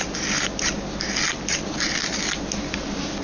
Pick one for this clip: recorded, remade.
recorded